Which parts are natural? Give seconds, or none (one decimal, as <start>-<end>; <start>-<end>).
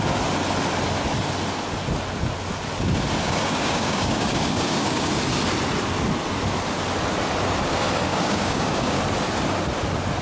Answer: 0.0-3.2; 5.1-8.1; 9.0-10.2